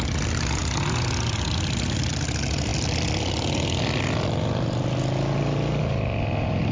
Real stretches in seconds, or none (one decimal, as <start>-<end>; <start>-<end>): 0.0-2.7; 3.8-6.7